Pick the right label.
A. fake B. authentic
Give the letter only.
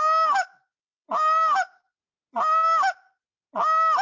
B